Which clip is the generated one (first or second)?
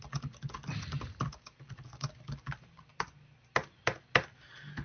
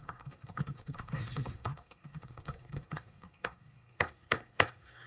second